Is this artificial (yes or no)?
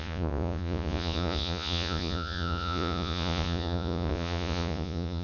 yes